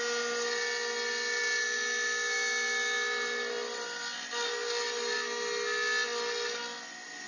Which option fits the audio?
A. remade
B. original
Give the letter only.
B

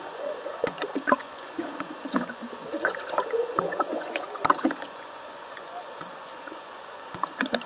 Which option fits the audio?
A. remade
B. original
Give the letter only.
A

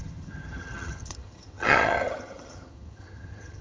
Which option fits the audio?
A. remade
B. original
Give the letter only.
A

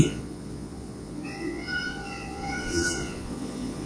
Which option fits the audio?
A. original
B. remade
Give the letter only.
B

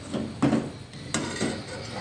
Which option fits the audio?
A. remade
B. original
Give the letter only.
B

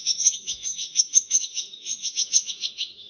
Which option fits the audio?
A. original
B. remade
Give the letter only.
B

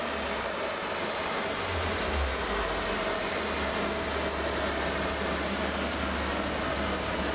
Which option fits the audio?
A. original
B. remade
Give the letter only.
A